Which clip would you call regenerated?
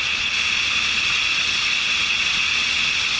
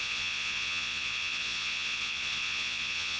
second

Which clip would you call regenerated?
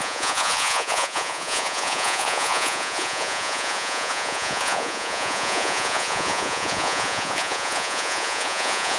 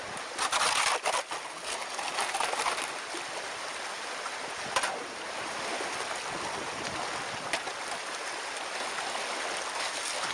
first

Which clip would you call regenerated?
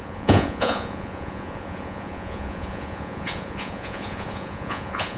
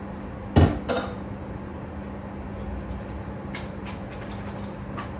first